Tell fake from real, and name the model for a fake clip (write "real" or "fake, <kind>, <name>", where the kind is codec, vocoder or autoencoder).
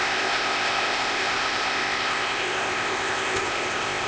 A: fake, codec, ZipCodec